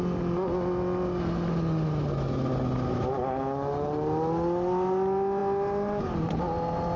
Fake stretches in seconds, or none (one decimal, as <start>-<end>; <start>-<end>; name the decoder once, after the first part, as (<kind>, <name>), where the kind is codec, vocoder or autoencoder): none